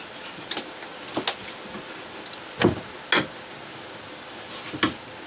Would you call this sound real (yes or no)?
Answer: yes